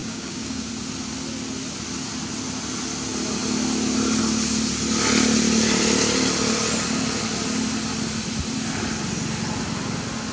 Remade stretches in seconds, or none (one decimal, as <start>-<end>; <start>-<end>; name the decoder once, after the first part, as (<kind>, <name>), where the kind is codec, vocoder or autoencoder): 0.0-0.7 (codec, DAC)